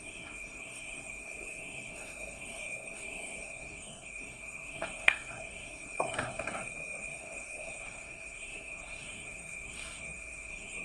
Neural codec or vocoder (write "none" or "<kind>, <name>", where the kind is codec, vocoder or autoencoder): codec, SNAC